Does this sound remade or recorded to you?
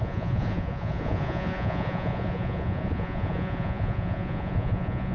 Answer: remade